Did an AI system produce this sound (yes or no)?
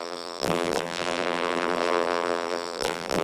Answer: yes